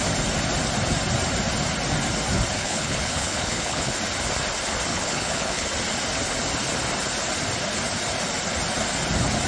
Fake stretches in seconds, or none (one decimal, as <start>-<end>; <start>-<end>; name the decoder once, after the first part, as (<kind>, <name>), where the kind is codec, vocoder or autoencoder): 2.6-3.9 (codec, HILCodec); 4.9-5.7